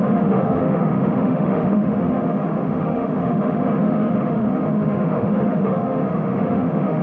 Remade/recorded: remade